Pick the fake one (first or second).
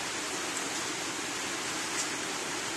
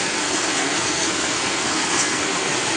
second